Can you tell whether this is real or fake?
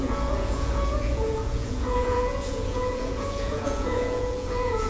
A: fake